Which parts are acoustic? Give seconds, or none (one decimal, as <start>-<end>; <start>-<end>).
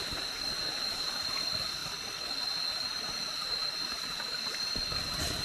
0.0-5.4